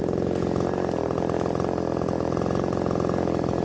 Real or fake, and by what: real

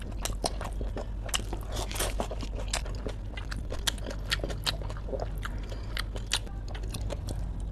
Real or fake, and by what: real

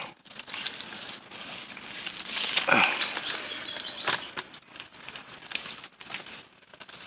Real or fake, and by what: real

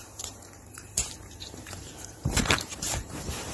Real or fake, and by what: fake, vocoder, BigVGAN v2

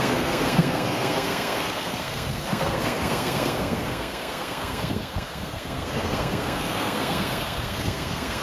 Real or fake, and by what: fake, codec, SNAC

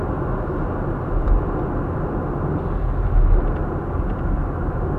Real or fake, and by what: real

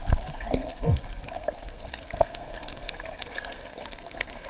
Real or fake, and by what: fake, codec, SNAC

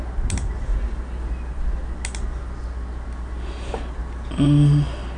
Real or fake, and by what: real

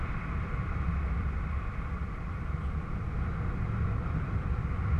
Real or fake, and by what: fake, vocoder, BigVGAN v2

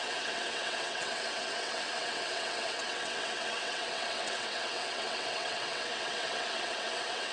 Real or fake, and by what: fake, vocoder, WaveNeXt